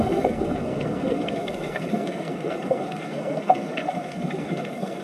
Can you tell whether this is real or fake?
fake